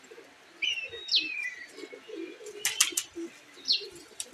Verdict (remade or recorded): recorded